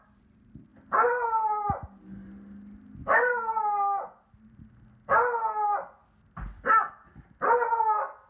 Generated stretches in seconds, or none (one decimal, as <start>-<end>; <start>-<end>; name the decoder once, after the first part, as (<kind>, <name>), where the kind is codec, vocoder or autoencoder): none